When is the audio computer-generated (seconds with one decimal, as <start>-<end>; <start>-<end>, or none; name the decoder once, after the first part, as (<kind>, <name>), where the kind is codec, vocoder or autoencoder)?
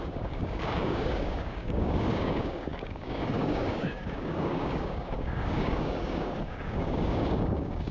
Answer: 0.0-7.9 (codec, DAC)